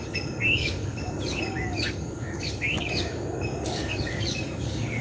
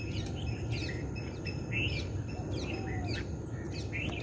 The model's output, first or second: first